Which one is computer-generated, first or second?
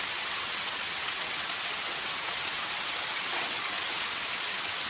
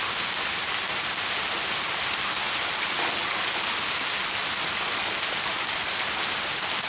first